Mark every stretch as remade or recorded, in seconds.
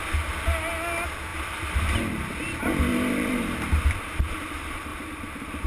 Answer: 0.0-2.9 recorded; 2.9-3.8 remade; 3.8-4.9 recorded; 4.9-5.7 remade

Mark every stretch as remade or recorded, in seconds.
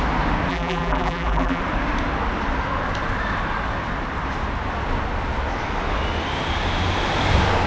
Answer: 0.0-0.5 recorded; 0.5-1.6 remade; 1.6-7.7 recorded